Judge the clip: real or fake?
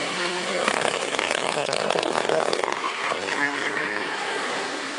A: fake